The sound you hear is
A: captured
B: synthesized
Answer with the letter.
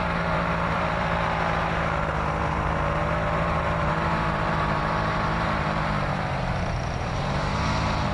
B